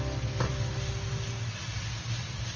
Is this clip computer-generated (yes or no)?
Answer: no